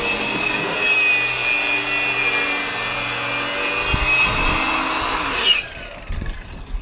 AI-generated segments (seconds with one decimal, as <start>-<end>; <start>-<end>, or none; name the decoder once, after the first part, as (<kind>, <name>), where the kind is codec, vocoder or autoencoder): none